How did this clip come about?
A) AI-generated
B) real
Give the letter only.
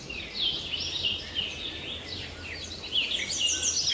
B